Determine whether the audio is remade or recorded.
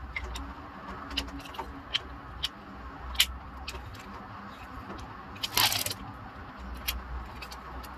recorded